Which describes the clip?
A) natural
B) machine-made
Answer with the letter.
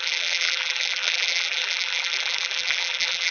B